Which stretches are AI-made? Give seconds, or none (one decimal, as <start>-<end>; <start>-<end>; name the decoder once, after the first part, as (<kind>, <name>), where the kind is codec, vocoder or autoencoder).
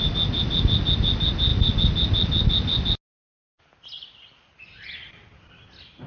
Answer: none